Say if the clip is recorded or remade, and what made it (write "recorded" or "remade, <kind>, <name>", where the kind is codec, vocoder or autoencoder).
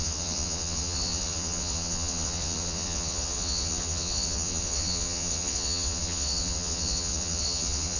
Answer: remade, vocoder, Vocos